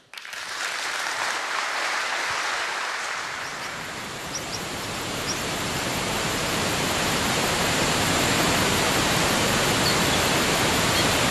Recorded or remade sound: remade